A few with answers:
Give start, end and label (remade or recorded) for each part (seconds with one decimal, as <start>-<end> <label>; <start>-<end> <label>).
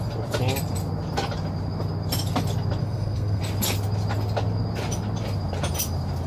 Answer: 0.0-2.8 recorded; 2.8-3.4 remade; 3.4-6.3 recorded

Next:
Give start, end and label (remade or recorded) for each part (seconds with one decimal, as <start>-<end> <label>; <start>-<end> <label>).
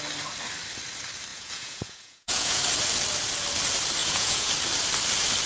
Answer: 0.0-1.3 recorded; 1.3-2.6 remade; 2.6-4.0 recorded; 4.0-4.5 remade; 4.5-5.5 recorded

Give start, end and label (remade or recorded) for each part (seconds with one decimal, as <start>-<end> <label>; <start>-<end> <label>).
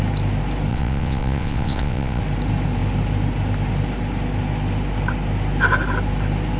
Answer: 0.0-0.7 recorded; 0.7-2.2 remade; 2.2-6.6 recorded